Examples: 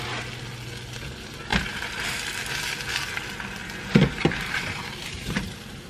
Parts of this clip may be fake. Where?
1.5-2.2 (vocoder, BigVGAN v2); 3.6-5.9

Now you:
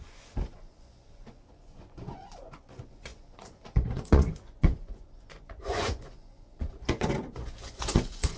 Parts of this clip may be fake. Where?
0.0-8.4 (vocoder, Vocos)

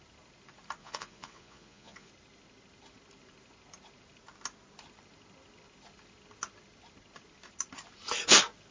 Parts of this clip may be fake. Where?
0.8-2.1 (vocoder, Vocos)

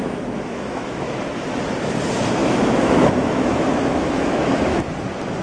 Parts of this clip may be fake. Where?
0.0-1.2 (autoencoder, DAC-VAE); 2.4-4.8

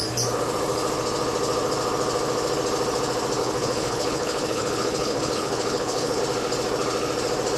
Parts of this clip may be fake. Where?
3.4-6.2 (codec, HILCodec)

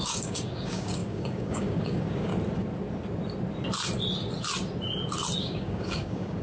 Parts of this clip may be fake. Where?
0.0-2.3 (codec, DAC); 5.4-6.4